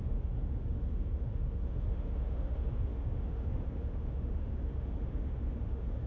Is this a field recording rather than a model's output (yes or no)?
no